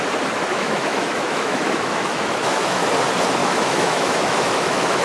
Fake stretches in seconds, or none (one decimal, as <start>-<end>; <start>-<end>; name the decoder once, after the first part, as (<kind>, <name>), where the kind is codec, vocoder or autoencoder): 0.5-2.8 (autoencoder, DAC-VAE); 3.4-5.0